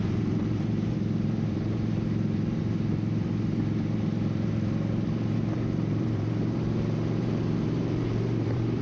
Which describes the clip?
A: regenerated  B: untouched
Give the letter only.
A